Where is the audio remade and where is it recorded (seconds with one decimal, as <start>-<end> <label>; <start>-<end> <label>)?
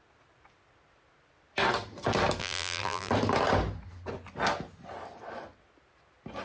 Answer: 0.0-2.4 recorded; 2.4-3.1 remade; 3.1-6.4 recorded